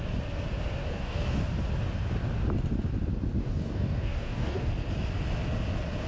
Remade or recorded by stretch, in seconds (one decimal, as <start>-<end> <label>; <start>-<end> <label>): 0.0-0.8 recorded; 0.8-1.4 remade; 1.4-3.4 recorded; 3.4-4.7 remade; 4.7-6.1 recorded